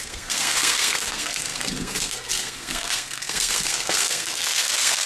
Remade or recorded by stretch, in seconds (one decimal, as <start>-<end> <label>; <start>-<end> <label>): 0.0-5.1 remade